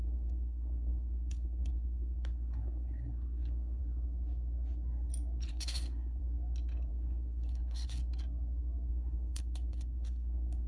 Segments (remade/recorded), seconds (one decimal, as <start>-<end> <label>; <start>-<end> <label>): 0.0-3.8 remade; 3.8-5.5 recorded; 5.5-6.2 remade; 6.2-6.9 recorded; 6.9-8.0 remade; 8.0-8.9 recorded; 8.9-10.7 remade